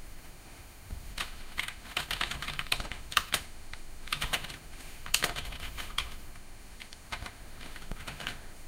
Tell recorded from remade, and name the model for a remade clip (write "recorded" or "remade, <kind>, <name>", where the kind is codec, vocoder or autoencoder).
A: remade, autoencoder, DAC-VAE